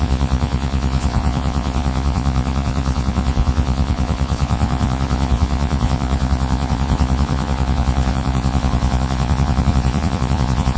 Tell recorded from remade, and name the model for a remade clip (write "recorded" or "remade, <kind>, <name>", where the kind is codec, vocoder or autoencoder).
remade, vocoder, Vocos